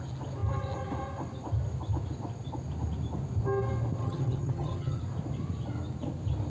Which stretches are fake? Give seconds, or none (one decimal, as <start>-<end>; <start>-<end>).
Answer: 4.0-5.0